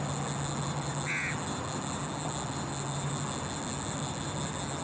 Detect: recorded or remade recorded